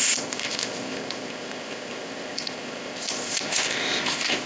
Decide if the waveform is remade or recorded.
remade